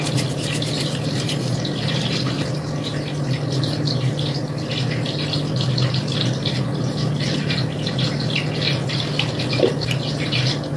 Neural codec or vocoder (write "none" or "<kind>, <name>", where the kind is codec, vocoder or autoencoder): none